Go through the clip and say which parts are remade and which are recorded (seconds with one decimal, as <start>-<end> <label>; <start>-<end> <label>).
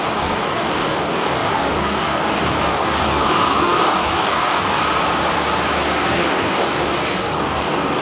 0.0-4.8 remade; 4.8-6.1 recorded; 6.1-8.0 remade